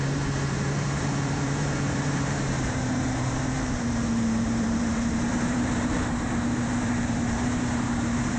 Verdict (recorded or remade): remade